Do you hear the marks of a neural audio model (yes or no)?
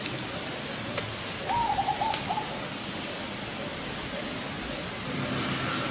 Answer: no